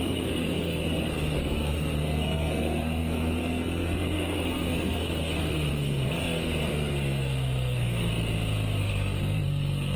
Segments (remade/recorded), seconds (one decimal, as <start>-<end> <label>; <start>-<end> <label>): 0.0-8.1 remade; 8.1-8.8 recorded; 8.8-10.0 remade